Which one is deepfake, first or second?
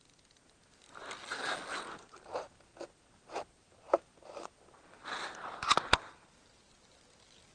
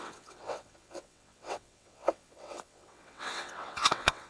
second